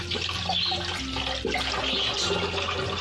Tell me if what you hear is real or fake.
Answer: real